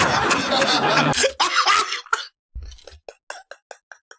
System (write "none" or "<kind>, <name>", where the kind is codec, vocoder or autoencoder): none